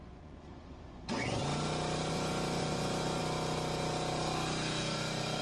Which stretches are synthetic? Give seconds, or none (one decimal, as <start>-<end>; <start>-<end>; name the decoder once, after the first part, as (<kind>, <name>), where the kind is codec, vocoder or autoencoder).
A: 0.0-1.4 (vocoder, Vocos); 2.1-3.2